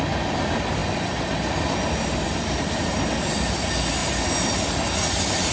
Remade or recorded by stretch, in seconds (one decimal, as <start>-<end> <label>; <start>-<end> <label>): 0.0-5.5 recorded